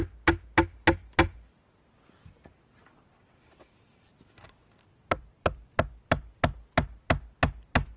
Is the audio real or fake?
real